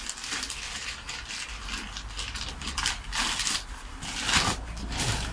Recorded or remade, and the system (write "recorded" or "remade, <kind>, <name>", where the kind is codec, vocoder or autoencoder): recorded